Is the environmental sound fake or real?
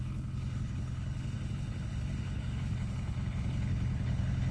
fake